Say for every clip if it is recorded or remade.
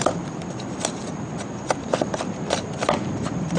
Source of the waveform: recorded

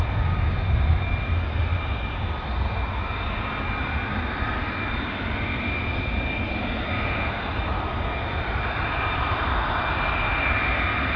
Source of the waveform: recorded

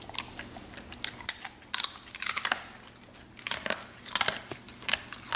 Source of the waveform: recorded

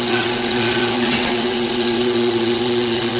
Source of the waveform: remade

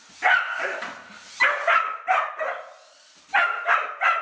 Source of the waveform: recorded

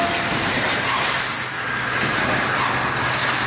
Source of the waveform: recorded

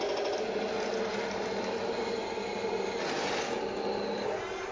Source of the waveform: recorded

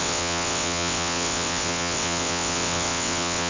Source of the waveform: remade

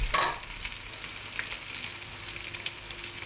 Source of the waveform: recorded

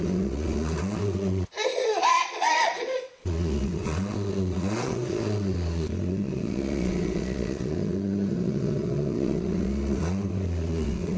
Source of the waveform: remade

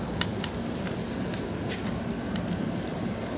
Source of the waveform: recorded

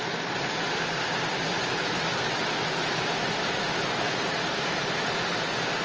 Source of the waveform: recorded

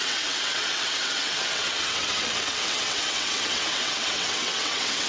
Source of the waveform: remade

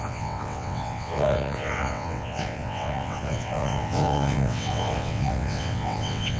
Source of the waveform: remade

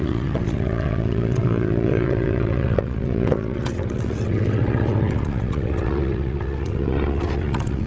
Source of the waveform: remade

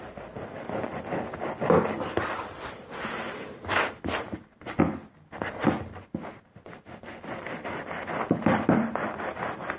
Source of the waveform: recorded